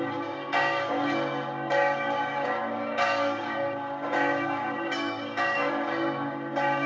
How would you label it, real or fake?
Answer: fake